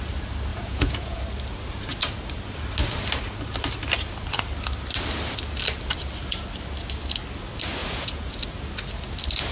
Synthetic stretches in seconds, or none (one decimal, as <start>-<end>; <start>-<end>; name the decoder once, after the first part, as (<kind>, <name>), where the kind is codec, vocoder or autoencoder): 0.5-1.2 (vocoder, Vocos); 7.8-8.3